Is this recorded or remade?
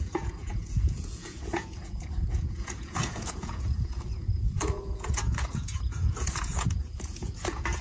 remade